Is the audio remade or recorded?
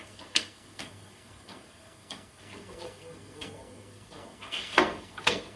remade